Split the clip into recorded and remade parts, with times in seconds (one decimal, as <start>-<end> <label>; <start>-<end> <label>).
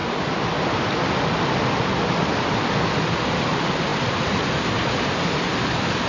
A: 0.0-6.1 recorded